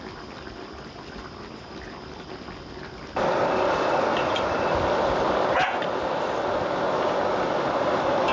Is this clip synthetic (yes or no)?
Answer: no